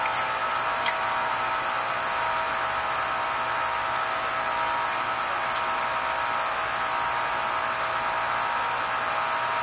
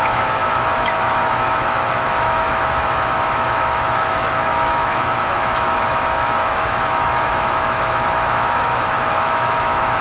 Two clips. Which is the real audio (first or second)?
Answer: first